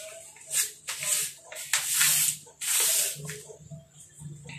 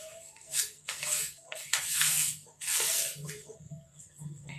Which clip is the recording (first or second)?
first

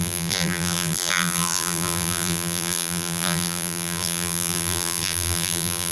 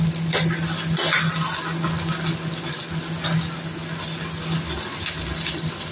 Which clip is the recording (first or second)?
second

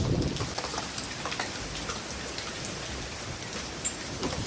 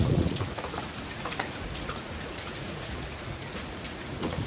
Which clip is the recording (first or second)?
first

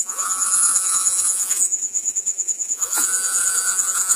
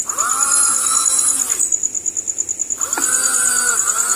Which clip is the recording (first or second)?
second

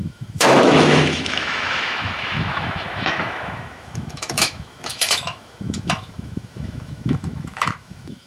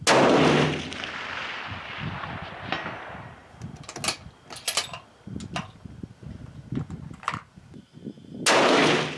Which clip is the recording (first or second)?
second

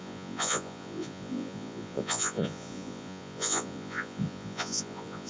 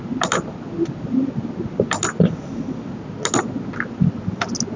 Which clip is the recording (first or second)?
second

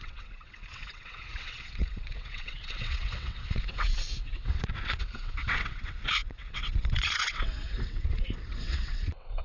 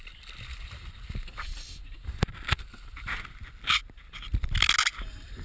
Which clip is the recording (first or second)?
second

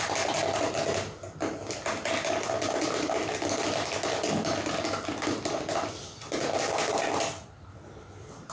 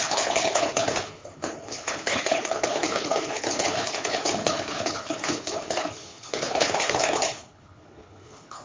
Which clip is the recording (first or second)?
first